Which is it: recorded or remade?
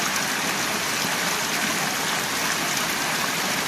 recorded